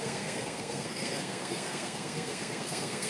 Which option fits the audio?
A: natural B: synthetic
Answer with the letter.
B